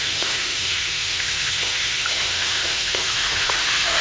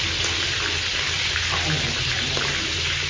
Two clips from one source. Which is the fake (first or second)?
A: first